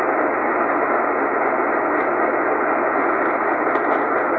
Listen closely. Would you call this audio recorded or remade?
recorded